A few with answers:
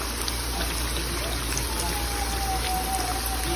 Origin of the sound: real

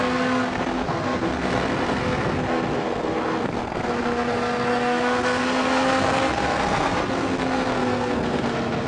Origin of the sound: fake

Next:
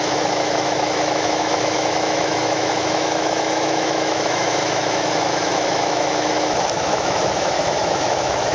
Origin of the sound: fake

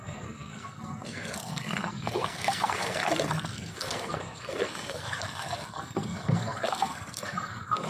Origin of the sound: fake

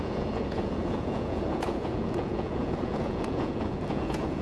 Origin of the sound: fake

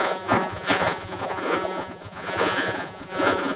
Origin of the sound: fake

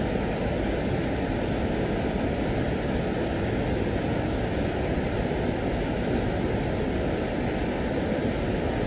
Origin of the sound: real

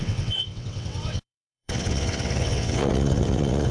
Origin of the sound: fake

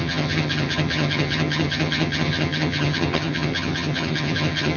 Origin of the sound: fake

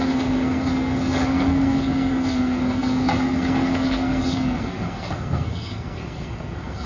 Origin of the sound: fake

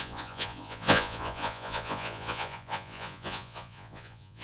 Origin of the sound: fake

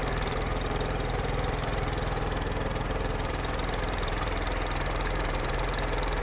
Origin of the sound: fake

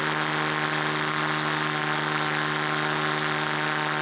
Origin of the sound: real